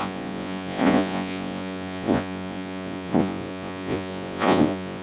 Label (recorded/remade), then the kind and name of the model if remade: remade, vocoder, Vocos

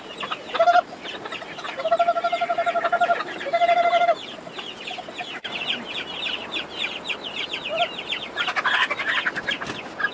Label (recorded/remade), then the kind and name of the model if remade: recorded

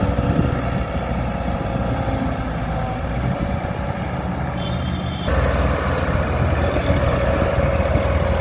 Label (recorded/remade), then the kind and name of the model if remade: recorded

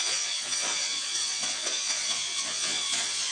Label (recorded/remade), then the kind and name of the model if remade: remade, vocoder, Vocos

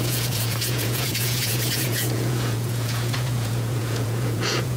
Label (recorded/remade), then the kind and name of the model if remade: remade, vocoder, Vocos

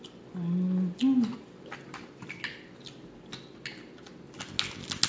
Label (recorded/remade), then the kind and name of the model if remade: recorded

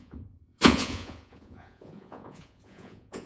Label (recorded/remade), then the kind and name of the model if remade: remade, vocoder, Vocos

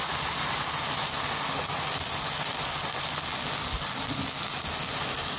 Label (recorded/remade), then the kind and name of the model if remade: recorded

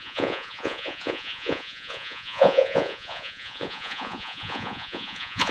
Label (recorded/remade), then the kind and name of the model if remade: remade, vocoder, Vocos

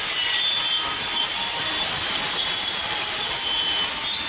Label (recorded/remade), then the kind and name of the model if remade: recorded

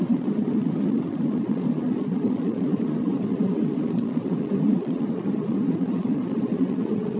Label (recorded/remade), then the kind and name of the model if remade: remade, vocoder, Vocos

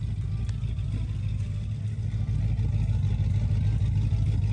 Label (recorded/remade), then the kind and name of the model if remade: recorded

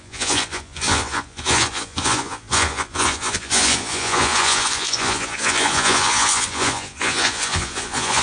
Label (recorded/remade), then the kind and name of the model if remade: remade, vocoder, Vocos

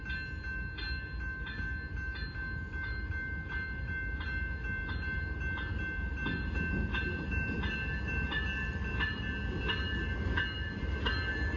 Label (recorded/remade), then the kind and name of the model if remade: recorded